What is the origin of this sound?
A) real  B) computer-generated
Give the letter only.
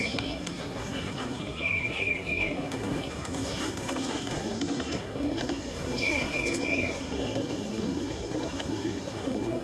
B